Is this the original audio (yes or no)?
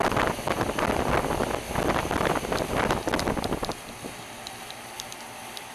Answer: yes